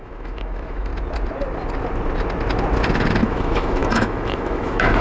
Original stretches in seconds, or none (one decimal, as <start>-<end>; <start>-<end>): 0.9-3.2